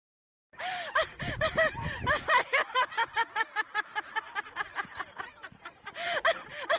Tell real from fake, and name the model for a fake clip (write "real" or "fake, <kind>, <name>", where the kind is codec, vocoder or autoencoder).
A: fake, vocoder, BigVGAN v2